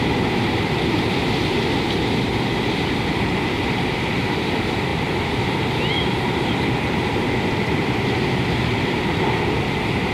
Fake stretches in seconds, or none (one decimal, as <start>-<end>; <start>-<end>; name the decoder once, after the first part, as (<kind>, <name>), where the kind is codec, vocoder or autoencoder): 0.0-10.1 (vocoder, BigVGAN v2)